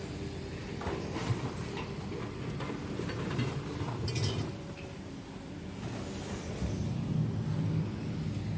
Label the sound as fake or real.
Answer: real